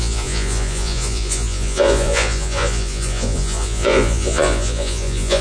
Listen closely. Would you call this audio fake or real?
fake